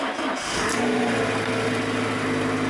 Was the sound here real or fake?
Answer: real